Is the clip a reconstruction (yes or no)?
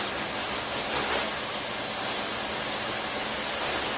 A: no